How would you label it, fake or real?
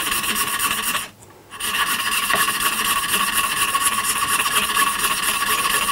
fake